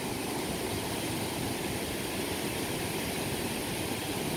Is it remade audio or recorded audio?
recorded